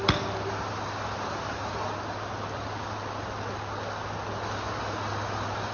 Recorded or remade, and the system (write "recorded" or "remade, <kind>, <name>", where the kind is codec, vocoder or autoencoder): recorded